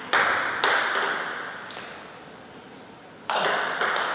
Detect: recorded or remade recorded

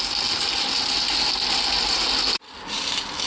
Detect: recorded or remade recorded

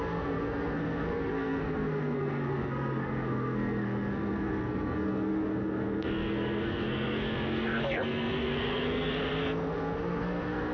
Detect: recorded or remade remade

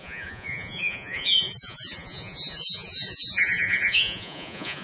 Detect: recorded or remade remade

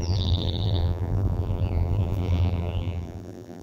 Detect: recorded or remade remade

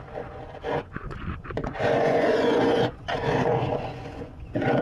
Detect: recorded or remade remade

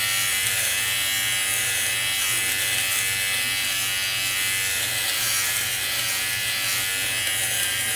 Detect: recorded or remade recorded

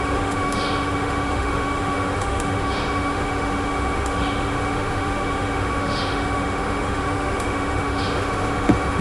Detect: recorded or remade remade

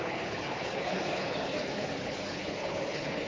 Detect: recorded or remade remade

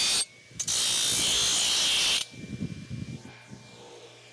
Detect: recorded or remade recorded